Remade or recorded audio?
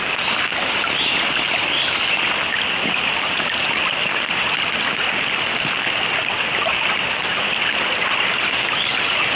recorded